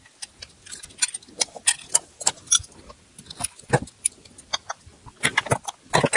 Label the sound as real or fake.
real